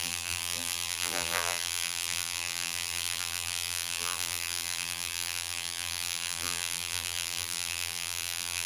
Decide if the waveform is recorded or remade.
remade